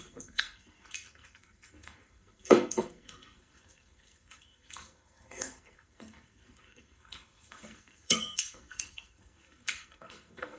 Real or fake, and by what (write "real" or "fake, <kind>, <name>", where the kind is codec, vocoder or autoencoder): fake, codec, SNAC